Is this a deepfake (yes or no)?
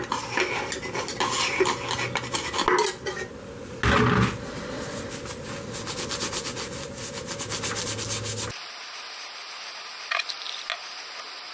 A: no